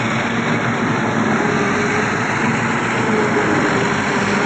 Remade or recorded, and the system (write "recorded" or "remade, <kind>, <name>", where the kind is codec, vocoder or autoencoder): recorded